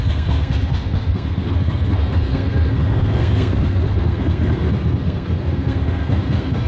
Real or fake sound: fake